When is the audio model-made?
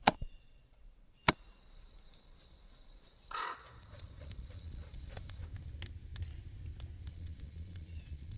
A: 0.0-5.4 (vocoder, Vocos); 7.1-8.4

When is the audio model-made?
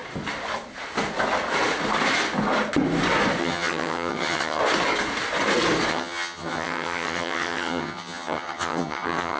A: 3.4-4.6 (vocoder, HiFi-GAN); 5.9-9.4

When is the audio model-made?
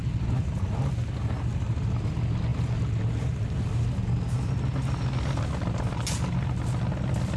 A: none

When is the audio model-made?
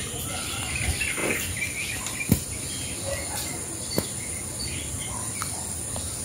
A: 0.0-6.2 (vocoder, BigVGAN v2)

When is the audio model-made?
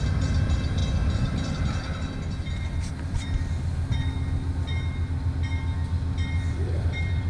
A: 0.8-3.4 (vocoder, BigVGAN v2)